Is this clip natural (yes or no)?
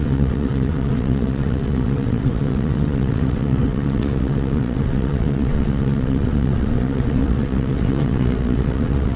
no